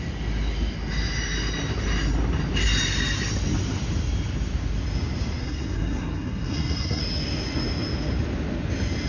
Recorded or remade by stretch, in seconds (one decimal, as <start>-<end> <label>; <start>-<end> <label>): 0.0-5.4 recorded; 5.4-7.0 remade; 7.0-9.1 recorded